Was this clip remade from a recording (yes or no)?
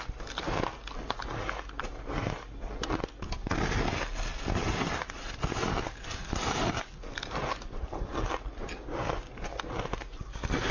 no